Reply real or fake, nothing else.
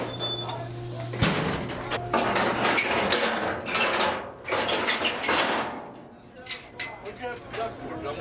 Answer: real